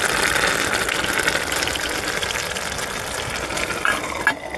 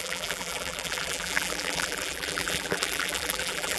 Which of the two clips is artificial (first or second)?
second